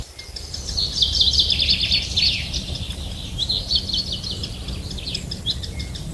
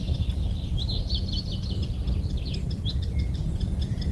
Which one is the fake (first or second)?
second